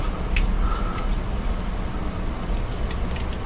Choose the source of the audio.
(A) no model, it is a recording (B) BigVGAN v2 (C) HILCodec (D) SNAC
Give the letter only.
A